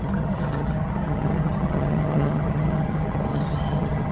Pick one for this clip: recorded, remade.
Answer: remade